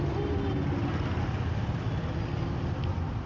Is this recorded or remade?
recorded